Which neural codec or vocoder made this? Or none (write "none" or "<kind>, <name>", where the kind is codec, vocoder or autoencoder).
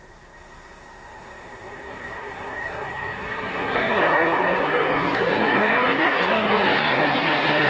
codec, SNAC